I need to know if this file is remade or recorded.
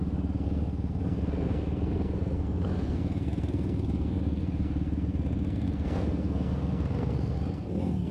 remade